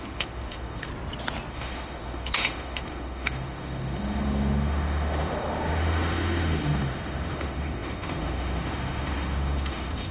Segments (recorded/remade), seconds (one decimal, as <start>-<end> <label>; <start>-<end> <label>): 0.0-0.9 remade; 0.9-1.5 recorded; 1.5-10.1 remade